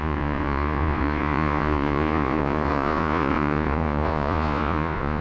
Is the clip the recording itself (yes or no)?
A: no